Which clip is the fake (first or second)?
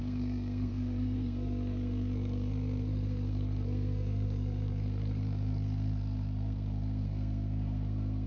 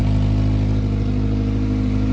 first